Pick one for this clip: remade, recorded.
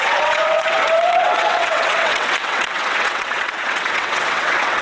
remade